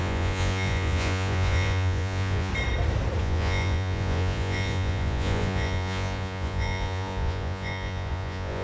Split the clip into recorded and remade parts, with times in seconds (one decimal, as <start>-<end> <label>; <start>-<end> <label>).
0.0-2.5 remade; 2.5-3.2 recorded; 3.2-8.6 remade